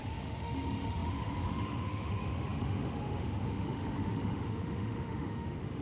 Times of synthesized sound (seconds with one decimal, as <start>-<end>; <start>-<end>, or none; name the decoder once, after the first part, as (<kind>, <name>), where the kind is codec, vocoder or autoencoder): 0.0-5.8 (autoencoder, DAC-VAE)